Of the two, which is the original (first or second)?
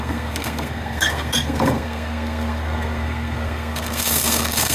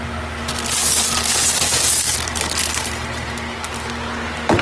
second